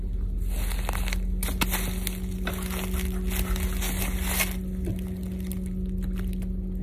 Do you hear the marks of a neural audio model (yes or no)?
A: no